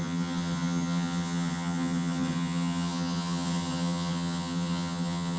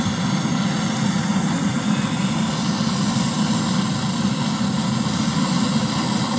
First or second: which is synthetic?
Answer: first